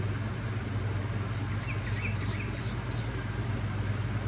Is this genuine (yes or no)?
yes